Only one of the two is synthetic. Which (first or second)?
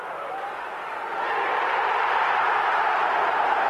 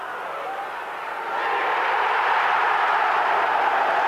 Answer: first